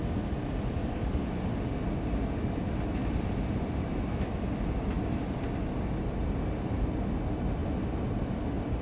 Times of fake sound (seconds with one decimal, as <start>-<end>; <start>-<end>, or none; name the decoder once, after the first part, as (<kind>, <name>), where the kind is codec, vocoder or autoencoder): 0.8-1.5 (vocoder, BigVGAN v2)